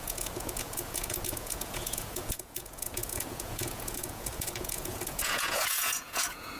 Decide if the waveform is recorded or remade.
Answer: remade